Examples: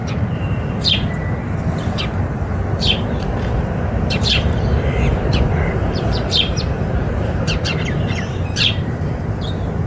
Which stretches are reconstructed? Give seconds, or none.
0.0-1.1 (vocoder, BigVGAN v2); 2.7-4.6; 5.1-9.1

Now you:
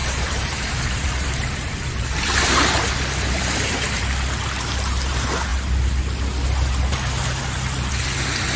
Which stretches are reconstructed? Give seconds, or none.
0.0-4.0 (vocoder, BigVGAN v2)

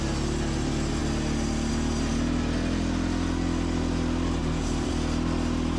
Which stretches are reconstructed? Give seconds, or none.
4.4-4.9 (vocoder, BigVGAN v2)

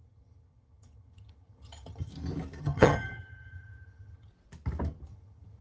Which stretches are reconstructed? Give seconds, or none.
0.0-2.1 (vocoder, HiFi-GAN); 2.6-4.3; 5.1-5.6

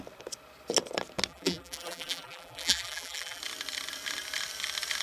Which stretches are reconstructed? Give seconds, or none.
1.3-3.4 (vocoder, BigVGAN v2)

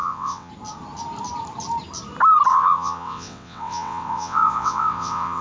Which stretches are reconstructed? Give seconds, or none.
0.0-0.5 (vocoder, WaveNeXt); 2.5-5.4

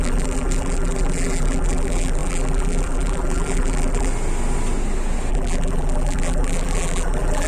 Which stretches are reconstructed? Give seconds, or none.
0.0-4.1 (vocoder, BigVGAN v2); 5.3-7.5